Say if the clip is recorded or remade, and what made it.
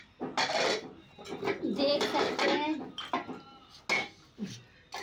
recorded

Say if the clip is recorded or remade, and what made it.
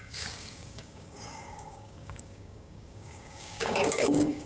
remade, codec, DAC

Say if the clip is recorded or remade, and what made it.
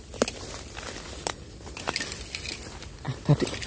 recorded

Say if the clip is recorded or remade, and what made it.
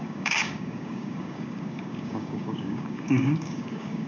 remade, codec, DAC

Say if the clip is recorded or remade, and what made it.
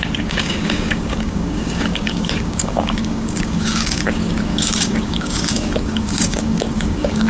remade, codec, DAC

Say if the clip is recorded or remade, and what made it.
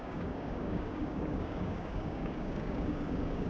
remade, codec, DAC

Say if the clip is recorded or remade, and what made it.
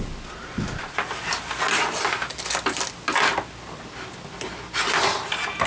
recorded